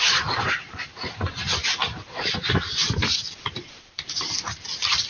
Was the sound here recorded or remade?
remade